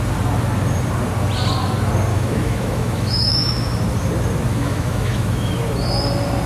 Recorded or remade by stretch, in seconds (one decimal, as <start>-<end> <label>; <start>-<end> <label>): 0.0-2.1 recorded; 2.1-3.8 remade; 3.8-4.5 recorded; 4.5-5.6 remade; 5.6-6.5 recorded